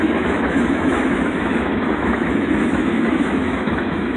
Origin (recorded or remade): remade